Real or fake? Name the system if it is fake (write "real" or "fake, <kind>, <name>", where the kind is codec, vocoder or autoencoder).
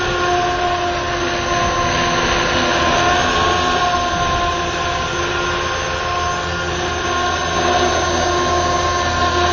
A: real